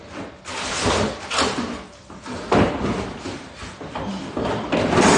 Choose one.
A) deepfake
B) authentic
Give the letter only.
B